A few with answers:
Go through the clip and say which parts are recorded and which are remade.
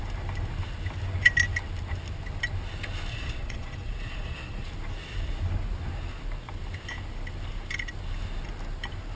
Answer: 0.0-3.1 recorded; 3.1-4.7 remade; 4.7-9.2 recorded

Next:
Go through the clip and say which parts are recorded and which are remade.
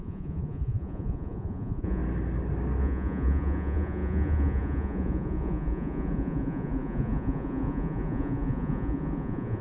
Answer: 0.0-2.0 remade; 2.0-2.8 recorded; 2.8-9.6 remade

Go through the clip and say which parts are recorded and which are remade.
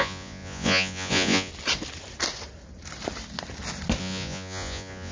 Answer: 0.0-1.5 remade; 1.5-4.0 recorded; 4.0-5.1 remade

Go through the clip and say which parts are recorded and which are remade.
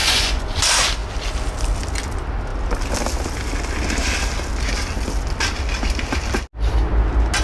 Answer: 0.0-0.6 remade; 0.6-7.4 recorded